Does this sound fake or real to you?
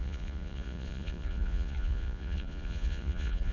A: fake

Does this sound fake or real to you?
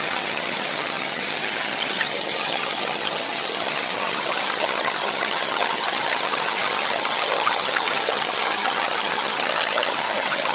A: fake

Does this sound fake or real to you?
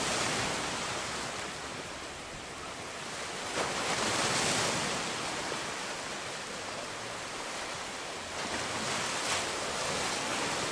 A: real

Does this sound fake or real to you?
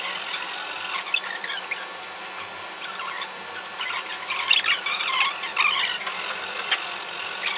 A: real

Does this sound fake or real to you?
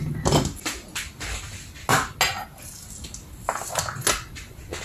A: real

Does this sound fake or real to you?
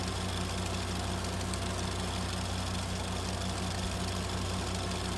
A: real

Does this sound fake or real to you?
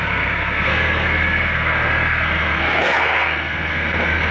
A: fake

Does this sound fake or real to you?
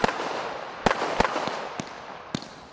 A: real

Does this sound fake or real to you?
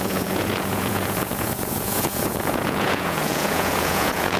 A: fake